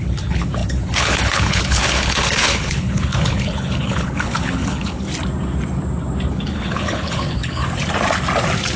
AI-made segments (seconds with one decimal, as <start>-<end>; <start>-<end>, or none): 0.0-5.1; 6.3-7.6